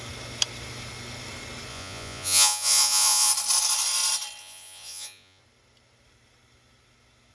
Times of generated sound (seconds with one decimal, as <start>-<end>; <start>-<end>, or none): 1.7-3.3; 4.4-5.4